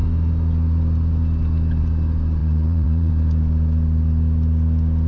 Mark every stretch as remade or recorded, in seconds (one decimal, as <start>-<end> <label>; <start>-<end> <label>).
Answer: 0.0-2.4 recorded; 2.4-3.1 remade; 3.1-5.1 recorded

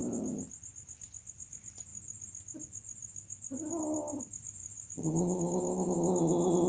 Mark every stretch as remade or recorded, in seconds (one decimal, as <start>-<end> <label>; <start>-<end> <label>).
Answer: 0.0-4.6 recorded; 4.6-5.4 remade; 5.4-6.7 recorded

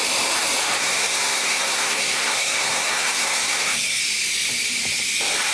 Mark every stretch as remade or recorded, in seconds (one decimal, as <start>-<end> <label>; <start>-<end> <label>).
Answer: 0.0-0.8 recorded; 0.8-4.0 remade; 4.0-5.5 recorded

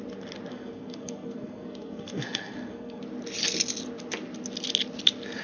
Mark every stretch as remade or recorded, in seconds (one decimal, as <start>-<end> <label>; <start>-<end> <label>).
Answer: 0.0-0.5 recorded; 0.5-3.0 remade; 3.0-5.4 recorded